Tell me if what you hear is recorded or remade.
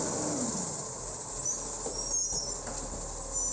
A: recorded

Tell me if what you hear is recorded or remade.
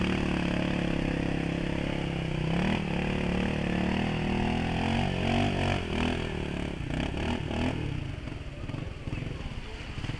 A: recorded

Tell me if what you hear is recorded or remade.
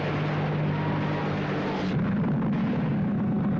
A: recorded